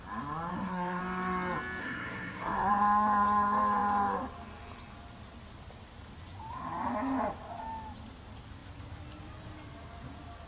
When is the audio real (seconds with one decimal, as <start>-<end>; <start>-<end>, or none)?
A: 0.0-0.5; 1.0-1.8; 2.7-10.5